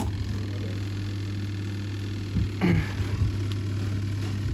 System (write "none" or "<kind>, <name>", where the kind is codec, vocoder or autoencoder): none